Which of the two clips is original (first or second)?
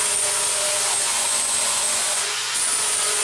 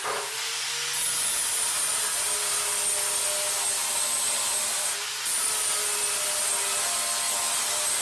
second